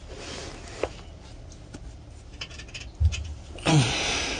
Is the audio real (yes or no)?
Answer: yes